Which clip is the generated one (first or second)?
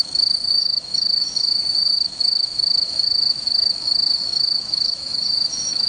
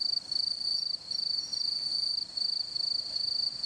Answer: first